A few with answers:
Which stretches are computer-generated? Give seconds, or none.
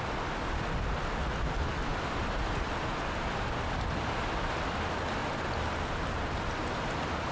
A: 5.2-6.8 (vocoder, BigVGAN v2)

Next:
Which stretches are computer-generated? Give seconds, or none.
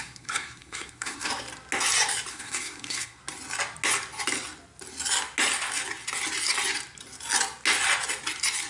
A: 0.0-1.3 (codec, SNAC); 2.3-3.2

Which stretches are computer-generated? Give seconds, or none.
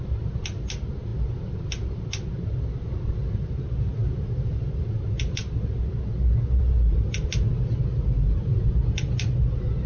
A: none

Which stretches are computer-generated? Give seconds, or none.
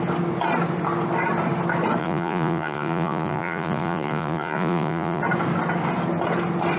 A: 2.0-5.2 (vocoder, Vocos)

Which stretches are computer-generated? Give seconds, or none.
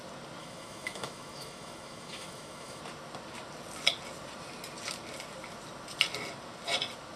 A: 0.4-2.8 (autoencoder, DAC-VAE)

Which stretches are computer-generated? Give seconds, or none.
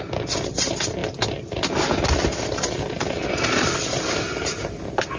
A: none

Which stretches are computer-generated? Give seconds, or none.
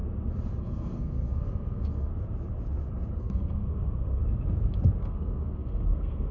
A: 0.6-2.1 (codec, SNAC); 3.2-4.2; 5.0-6.3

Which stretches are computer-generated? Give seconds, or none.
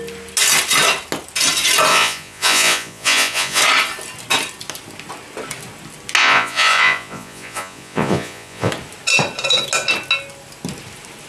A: 1.9-3.6 (vocoder, Vocos); 6.2-8.7